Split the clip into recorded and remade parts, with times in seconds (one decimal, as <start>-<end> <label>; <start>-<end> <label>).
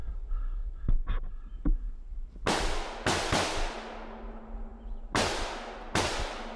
0.0-6.6 recorded